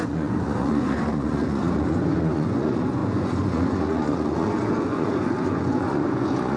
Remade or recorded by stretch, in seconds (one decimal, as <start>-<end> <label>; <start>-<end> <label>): 0.0-6.6 remade

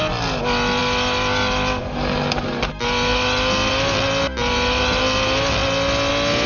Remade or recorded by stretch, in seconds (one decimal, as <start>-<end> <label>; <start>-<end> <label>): 0.0-6.5 recorded

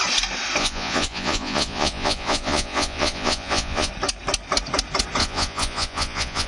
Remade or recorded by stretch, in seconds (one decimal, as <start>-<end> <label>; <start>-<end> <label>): 0.0-0.6 recorded; 0.6-3.9 remade; 3.9-5.2 recorded; 5.2-6.5 remade

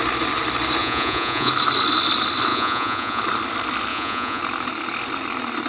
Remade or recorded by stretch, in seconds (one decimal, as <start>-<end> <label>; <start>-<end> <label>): 0.0-0.8 recorded; 0.8-1.5 remade; 1.5-2.5 recorded; 2.5-3.2 remade; 3.2-3.9 recorded; 3.9-4.4 remade; 4.4-5.7 recorded

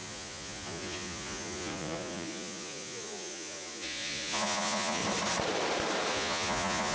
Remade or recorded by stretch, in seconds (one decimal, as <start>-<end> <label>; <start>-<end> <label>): 0.0-5.0 remade; 5.0-6.1 recorded; 6.1-6.9 remade

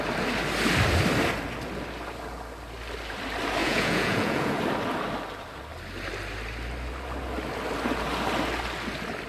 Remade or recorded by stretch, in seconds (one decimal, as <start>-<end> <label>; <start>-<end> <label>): 0.0-3.6 recorded; 3.6-4.6 remade; 4.6-9.3 recorded

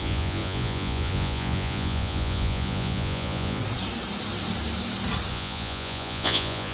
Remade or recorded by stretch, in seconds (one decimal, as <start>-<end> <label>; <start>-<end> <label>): 0.0-3.6 remade; 3.6-5.3 recorded; 5.3-6.7 remade

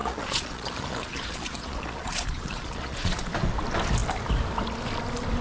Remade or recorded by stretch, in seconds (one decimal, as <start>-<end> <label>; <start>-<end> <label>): 0.0-3.2 remade; 3.2-5.4 recorded